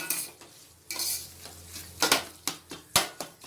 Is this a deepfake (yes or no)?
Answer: no